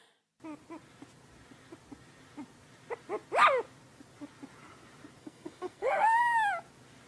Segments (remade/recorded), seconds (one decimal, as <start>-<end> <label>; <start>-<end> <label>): 0.0-5.2 recorded; 5.2-6.2 remade; 6.2-7.1 recorded

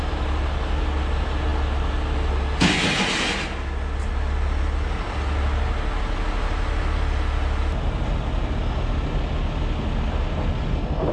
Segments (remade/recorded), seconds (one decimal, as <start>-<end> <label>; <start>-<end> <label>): 0.0-11.1 recorded

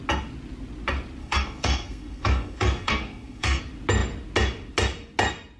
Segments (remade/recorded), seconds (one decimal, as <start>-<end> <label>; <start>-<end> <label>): 0.0-1.2 recorded; 1.2-3.6 remade; 3.6-5.6 recorded

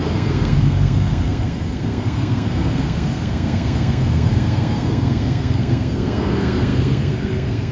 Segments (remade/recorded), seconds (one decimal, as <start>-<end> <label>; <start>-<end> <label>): 0.0-7.7 remade

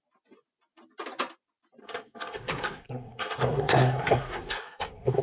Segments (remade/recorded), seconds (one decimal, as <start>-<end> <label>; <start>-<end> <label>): 0.0-1.8 recorded; 1.8-5.2 remade

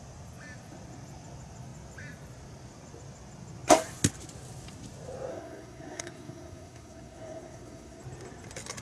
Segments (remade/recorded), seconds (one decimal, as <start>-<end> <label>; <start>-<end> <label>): 0.0-5.3 recorded; 5.3-8.0 remade; 8.0-8.8 recorded

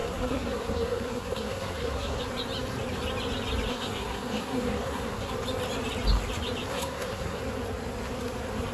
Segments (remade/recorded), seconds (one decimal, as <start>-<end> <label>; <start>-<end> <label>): 0.0-2.2 remade; 2.2-3.7 recorded; 3.7-5.3 remade; 5.3-6.7 recorded; 6.7-7.4 remade; 7.4-8.7 recorded

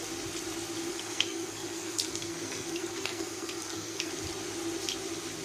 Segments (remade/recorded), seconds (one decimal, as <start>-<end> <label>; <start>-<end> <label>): 0.0-0.9 recorded; 0.9-4.1 remade; 4.1-5.4 recorded